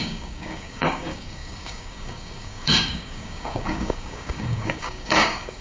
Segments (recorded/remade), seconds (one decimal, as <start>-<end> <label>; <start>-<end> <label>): 0.0-5.6 remade